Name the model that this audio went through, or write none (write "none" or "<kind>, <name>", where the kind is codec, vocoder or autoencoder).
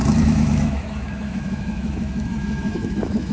autoencoder, DAC-VAE